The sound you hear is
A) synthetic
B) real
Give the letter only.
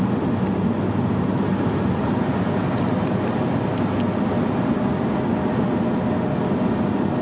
B